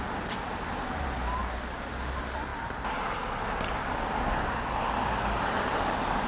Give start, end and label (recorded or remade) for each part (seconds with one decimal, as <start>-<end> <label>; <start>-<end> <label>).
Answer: 0.0-6.3 recorded